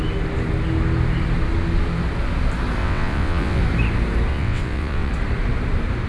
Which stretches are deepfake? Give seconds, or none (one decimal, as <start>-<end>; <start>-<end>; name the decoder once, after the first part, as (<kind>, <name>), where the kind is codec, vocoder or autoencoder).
2.8-3.6 (vocoder, WaveNeXt); 4.3-5.1